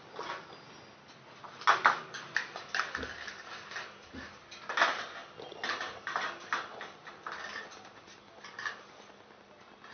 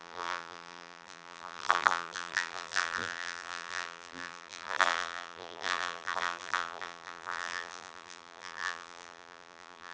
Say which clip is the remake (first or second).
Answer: second